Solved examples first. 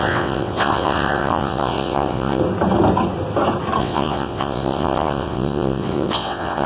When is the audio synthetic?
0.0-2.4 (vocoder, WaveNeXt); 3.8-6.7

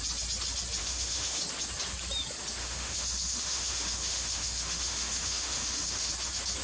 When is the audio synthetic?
0.8-1.4 (autoencoder, DAC-VAE); 2.6-6.1